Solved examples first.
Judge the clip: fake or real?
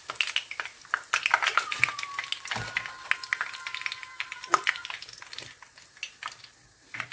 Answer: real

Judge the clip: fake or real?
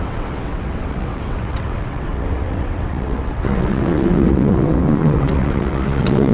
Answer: fake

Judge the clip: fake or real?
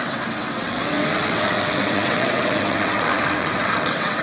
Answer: fake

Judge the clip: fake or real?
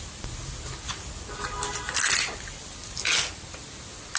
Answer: real